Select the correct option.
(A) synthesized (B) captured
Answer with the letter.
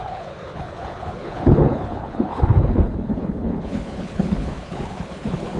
A